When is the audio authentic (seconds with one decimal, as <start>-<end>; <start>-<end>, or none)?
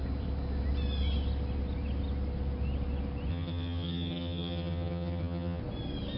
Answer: 0.0-3.3; 5.6-6.2